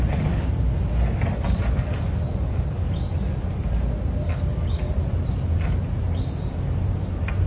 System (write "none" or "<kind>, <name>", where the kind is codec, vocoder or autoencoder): none